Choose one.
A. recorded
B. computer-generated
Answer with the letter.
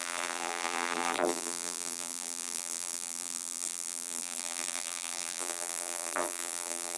B